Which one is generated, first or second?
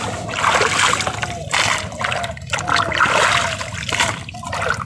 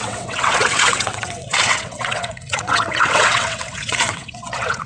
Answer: second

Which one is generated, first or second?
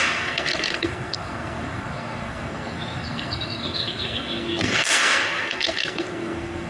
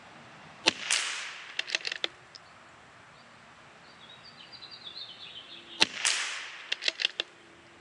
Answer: first